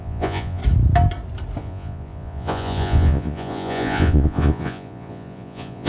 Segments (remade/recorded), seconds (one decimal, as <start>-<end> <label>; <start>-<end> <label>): 0.0-0.6 remade; 0.6-1.6 recorded; 1.6-5.9 remade